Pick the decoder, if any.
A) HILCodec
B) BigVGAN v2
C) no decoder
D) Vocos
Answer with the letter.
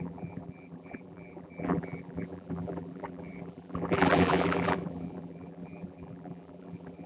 B